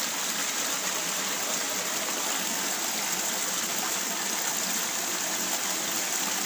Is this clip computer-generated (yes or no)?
no